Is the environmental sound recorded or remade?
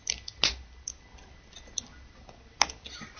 recorded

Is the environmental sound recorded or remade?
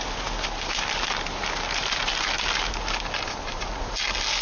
recorded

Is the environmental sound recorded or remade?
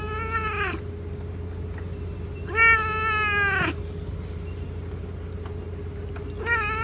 recorded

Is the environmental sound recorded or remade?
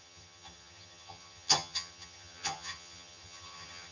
remade